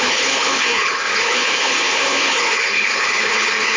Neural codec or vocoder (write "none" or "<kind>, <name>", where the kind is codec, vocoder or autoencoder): codec, HILCodec